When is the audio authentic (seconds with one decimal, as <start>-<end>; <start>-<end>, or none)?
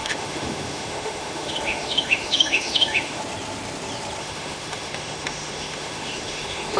3.2-4.2